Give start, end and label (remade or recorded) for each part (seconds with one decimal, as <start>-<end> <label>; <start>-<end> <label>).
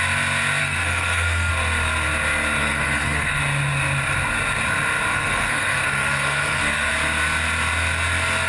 0.0-0.6 recorded; 0.6-1.5 remade; 1.5-2.6 recorded; 2.6-3.4 remade; 3.4-5.1 recorded; 5.1-6.9 remade; 6.9-8.5 recorded